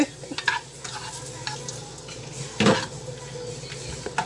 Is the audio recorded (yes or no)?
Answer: yes